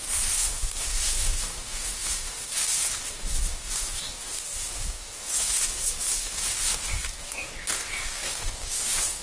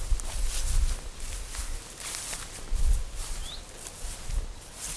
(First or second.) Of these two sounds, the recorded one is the second